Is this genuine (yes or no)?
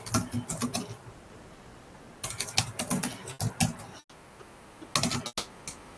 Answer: yes